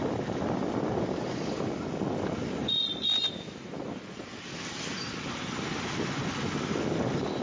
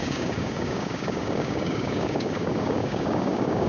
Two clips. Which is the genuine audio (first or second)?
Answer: first